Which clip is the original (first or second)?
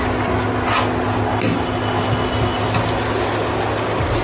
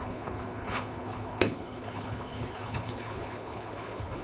first